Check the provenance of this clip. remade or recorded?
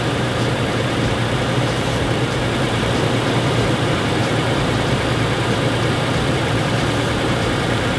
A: remade